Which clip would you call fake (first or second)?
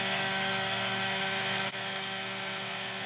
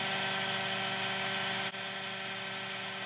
first